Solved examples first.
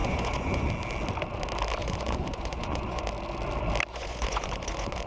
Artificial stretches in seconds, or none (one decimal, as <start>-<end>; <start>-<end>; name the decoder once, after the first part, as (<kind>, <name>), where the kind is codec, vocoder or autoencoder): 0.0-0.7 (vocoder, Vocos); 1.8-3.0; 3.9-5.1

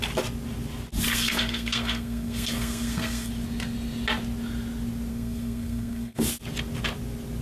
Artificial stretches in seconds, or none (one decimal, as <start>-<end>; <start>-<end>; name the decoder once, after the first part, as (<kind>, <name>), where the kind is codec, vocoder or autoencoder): 1.1-3.3 (codec, SNAC); 5.1-6.2

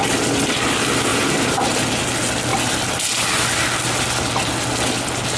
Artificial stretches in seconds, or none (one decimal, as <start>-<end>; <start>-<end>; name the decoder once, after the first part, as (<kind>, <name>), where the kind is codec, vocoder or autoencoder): 1.1-1.6 (vocoder, BigVGAN v2)

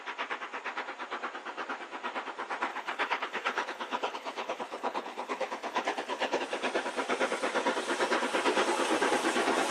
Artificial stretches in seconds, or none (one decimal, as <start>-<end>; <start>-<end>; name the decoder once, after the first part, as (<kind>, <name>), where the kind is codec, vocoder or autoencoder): 2.7-6.4 (codec, HILCodec)

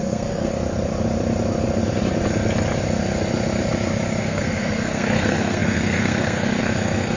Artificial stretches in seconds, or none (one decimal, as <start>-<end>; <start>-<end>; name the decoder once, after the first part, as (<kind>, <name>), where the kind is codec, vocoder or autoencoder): 0.0-0.5 (codec, SNAC); 4.2-7.2

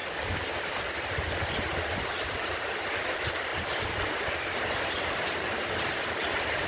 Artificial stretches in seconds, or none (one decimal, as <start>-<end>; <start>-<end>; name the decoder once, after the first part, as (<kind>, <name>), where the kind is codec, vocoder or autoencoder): none

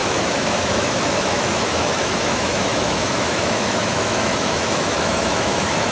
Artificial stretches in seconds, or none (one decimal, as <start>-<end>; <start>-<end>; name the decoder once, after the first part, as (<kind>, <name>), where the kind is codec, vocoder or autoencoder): 0.0-5.9 (autoencoder, DAC-VAE)

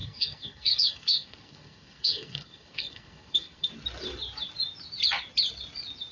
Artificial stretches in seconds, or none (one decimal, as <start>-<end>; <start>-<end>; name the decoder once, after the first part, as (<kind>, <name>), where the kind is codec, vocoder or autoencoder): 0.0-3.7 (codec, SNAC)